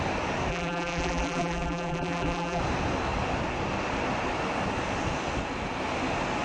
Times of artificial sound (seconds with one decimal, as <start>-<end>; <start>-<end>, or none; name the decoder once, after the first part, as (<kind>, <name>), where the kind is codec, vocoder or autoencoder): 0.5-2.6 (vocoder, BigVGAN v2)